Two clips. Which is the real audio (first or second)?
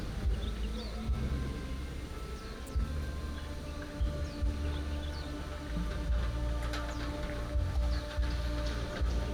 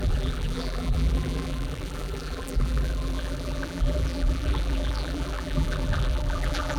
first